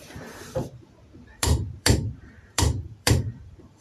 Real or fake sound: fake